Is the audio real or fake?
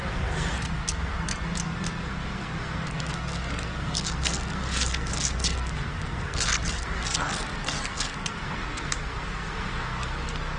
fake